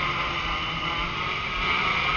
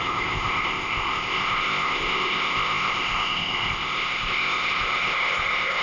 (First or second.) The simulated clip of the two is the second